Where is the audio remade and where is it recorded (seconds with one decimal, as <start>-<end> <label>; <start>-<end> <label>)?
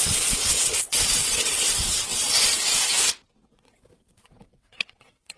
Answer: 0.0-2.9 remade; 2.9-3.5 recorded; 3.5-5.4 remade